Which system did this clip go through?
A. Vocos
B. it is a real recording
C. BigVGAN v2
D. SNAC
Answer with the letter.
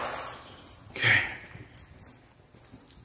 B